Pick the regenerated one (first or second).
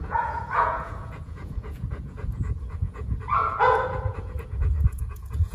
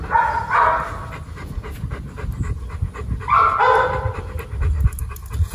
first